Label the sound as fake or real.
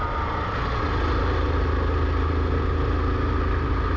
real